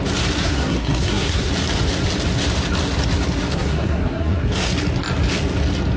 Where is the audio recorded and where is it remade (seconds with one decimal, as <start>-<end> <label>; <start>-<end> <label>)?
0.0-0.4 recorded; 0.4-1.5 remade; 1.5-3.5 recorded; 3.5-4.5 remade; 4.5-6.0 recorded